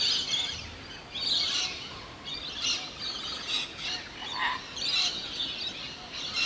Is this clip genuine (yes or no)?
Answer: yes